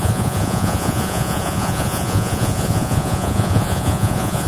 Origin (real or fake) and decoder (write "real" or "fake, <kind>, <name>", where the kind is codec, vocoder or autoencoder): fake, vocoder, Vocos